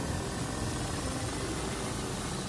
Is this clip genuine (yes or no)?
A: yes